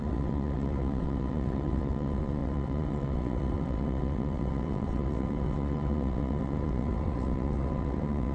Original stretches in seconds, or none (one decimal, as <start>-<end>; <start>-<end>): none